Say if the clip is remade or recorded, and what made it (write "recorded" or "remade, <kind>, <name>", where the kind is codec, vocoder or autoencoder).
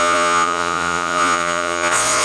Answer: remade, vocoder, Vocos